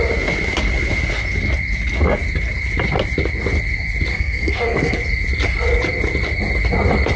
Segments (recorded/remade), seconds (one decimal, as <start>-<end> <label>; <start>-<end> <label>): 0.0-4.1 recorded; 4.1-5.0 remade; 5.0-7.2 recorded

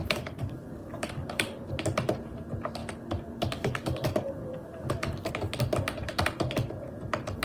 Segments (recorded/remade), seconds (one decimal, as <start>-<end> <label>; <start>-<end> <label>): 0.0-1.7 remade; 1.7-2.8 recorded; 2.8-5.3 remade; 5.3-7.4 recorded

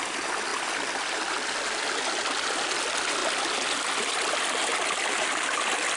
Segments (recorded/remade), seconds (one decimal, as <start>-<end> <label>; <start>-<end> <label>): 0.0-6.0 recorded

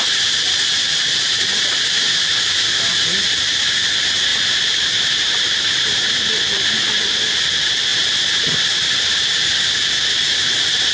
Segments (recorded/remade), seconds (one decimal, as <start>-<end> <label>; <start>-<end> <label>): 0.0-4.3 recorded; 4.3-6.3 remade; 6.3-7.9 recorded; 7.9-9.4 remade; 9.4-10.9 recorded

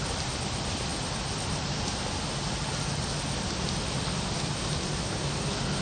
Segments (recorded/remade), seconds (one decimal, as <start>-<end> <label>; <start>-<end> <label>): 0.0-5.8 recorded

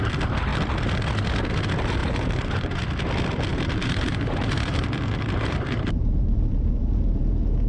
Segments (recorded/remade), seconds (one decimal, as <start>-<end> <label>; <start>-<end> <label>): 0.0-2.0 recorded; 2.0-2.8 remade; 2.8-3.5 recorded; 3.5-7.3 remade; 7.3-7.7 recorded